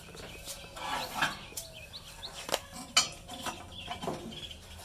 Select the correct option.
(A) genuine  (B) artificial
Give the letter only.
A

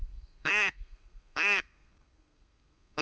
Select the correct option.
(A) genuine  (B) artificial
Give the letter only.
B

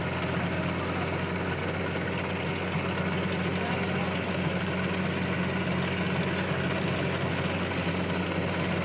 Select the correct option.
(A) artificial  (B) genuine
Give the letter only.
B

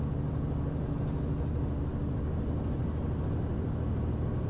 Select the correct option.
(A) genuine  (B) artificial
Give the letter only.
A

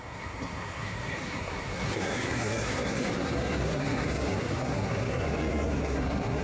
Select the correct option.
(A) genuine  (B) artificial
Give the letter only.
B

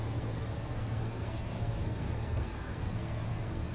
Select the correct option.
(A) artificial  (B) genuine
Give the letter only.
A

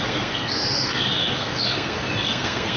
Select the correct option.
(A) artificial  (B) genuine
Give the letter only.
A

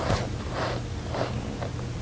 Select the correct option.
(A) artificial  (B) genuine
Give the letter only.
B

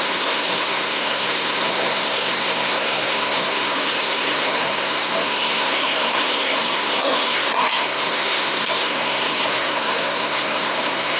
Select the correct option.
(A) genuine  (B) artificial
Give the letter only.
B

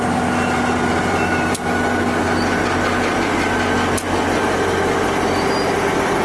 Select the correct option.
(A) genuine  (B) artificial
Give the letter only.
A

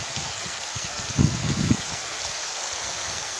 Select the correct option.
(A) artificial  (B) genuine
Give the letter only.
A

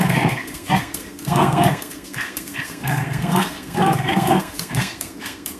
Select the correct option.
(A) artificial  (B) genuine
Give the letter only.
A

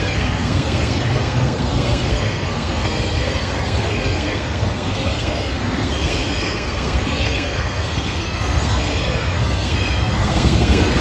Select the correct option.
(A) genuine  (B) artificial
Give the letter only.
B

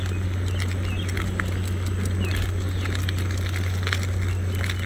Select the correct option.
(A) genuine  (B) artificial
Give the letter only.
A